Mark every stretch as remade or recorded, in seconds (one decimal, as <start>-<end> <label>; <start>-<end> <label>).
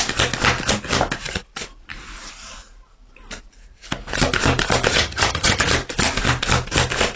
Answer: 0.0-4.9 recorded; 4.9-5.6 remade; 5.6-7.2 recorded